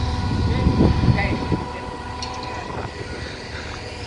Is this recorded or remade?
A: recorded